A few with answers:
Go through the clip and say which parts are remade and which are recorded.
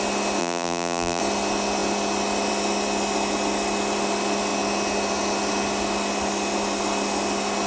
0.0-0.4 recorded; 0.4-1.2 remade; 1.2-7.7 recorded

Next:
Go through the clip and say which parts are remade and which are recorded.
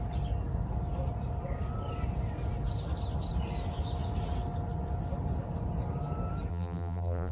0.0-6.5 recorded; 6.5-7.3 remade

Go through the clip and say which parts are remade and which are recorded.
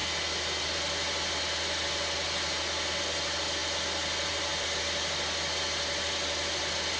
0.0-7.0 recorded